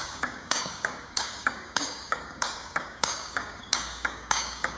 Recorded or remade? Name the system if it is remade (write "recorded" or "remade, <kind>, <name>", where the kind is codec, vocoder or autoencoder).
remade, codec, DAC